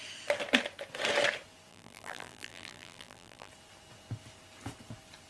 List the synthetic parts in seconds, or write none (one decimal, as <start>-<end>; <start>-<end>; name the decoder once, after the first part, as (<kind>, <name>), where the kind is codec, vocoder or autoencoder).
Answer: 1.7-3.5 (vocoder, BigVGAN v2)